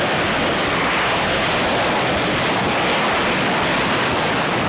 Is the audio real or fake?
real